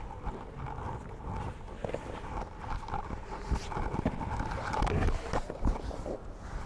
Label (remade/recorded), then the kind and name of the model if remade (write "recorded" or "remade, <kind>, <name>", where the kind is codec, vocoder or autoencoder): recorded